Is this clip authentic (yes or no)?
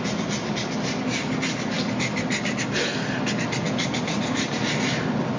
yes